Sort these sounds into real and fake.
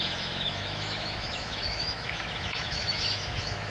fake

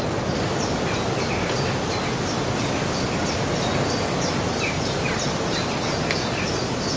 real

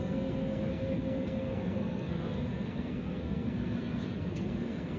fake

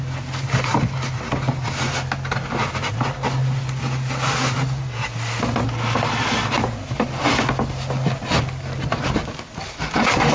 real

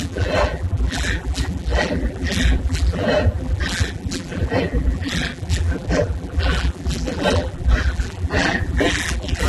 fake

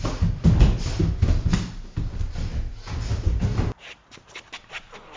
real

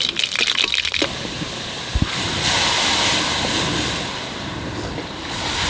fake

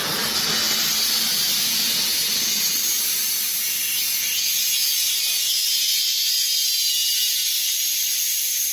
real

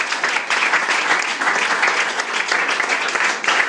fake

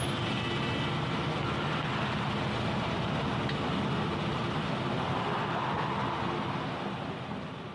real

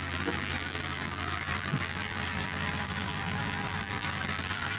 fake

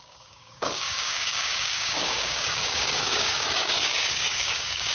fake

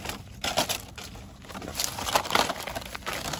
fake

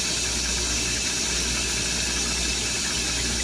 real